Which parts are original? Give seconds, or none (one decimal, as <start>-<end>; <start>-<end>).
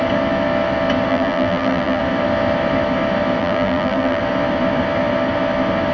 0.0-1.1; 2.0-3.4; 4.2-5.9